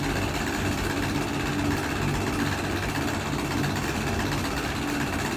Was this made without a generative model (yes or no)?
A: yes